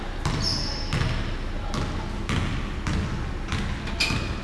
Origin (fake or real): real